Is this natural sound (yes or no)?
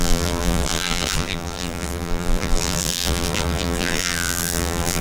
no